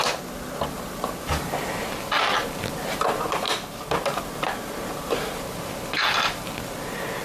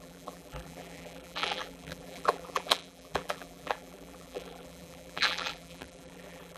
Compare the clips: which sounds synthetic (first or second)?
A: second